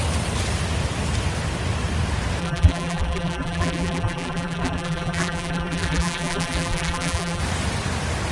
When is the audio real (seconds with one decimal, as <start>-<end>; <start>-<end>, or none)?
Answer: 0.0-2.4; 7.4-8.3